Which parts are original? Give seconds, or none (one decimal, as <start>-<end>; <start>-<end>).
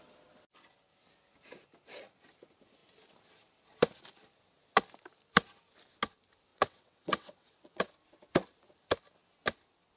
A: 0.0-6.5; 7.9-10.0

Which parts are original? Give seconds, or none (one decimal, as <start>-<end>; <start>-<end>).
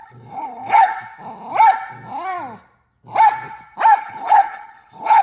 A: 0.9-4.0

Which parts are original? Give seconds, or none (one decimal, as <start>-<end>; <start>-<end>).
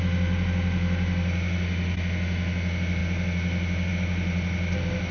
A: 0.0-5.1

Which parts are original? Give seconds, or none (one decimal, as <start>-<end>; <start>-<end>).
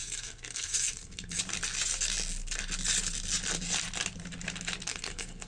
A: 1.4-4.9